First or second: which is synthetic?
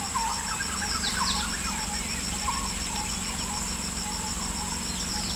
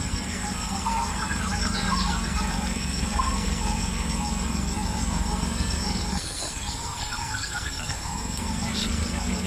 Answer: second